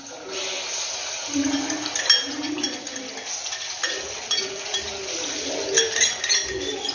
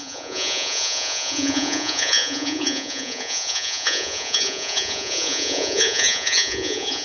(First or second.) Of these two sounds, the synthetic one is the second